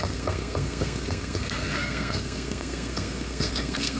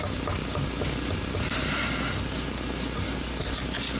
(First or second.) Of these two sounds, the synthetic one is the first